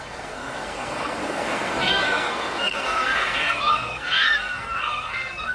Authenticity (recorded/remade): remade